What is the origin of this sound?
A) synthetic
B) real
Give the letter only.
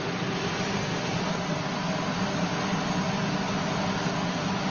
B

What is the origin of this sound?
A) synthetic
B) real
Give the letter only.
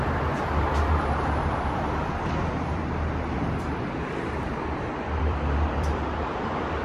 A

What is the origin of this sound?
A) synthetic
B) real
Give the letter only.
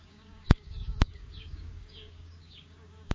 A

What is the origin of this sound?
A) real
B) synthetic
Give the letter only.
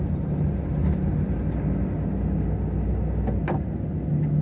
A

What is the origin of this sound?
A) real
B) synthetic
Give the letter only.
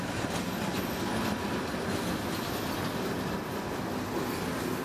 A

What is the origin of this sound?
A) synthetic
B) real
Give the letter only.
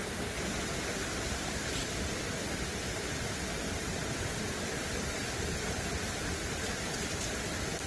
B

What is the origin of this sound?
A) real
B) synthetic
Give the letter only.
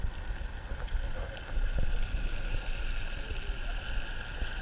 A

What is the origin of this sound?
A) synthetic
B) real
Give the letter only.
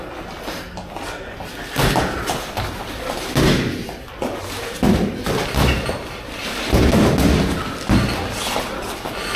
B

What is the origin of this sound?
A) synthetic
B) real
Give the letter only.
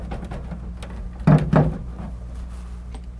B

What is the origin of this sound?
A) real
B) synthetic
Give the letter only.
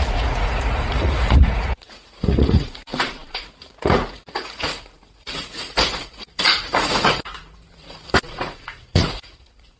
B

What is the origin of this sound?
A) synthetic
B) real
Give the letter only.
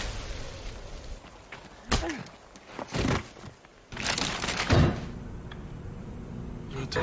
B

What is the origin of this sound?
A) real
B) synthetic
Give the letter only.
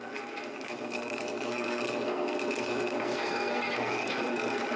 B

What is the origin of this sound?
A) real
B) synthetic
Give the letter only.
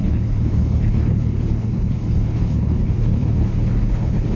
B